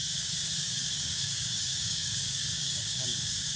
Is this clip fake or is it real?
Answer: fake